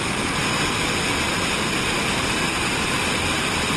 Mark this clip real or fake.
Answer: real